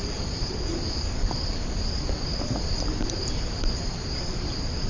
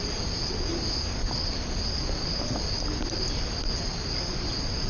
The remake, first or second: first